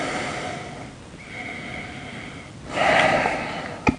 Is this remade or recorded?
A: recorded